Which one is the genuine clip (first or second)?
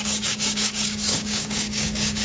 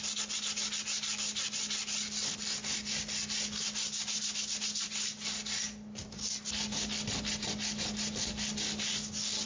second